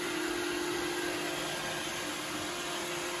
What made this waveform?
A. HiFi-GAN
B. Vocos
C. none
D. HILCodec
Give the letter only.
C